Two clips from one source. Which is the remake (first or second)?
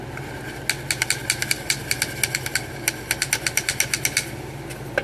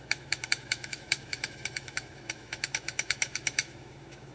second